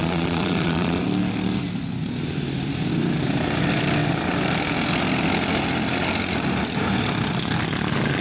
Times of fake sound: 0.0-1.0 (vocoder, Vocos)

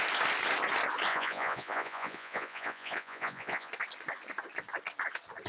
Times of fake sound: 1.1-3.7 (vocoder, Vocos)

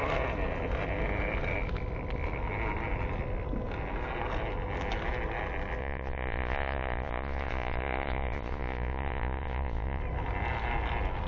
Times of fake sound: 5.8-10.0 (vocoder, Vocos)

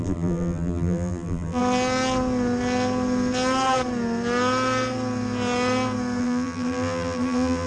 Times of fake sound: 0.0-1.6 (vocoder, BigVGAN v2); 6.2-7.7

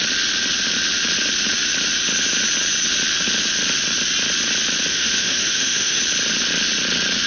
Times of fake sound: 4.9-6.0 (autoencoder, DAC-VAE)

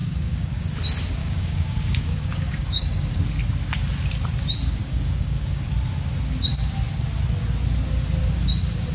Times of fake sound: 0.0-0.6 (codec, DAC); 1.2-3.2; 4.8-5.7